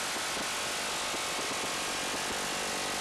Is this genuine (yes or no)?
yes